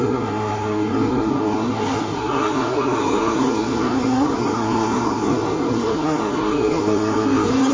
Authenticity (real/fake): fake